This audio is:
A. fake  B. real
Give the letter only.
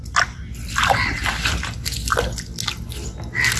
B